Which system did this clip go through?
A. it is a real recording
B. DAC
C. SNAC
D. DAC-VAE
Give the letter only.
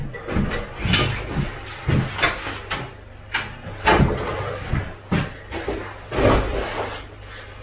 A